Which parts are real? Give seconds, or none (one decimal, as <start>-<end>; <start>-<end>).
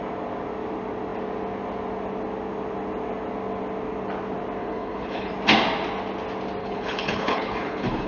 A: 0.0-4.6; 5.3-6.6